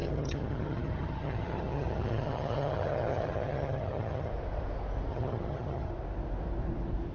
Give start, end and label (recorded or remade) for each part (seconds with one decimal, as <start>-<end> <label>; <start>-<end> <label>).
0.0-4.3 remade; 4.3-5.1 recorded; 5.1-5.9 remade; 5.9-7.1 recorded